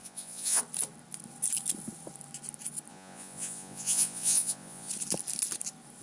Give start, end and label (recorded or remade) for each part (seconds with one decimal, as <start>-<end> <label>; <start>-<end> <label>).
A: 0.0-0.6 remade; 0.6-2.9 recorded; 2.9-4.9 remade; 4.9-6.0 recorded